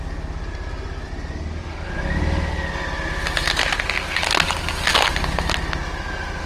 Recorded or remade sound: recorded